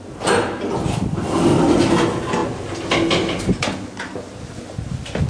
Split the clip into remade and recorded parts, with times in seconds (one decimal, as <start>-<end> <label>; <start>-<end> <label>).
0.0-5.3 recorded